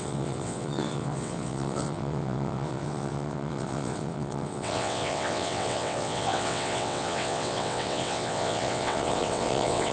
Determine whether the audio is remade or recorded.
remade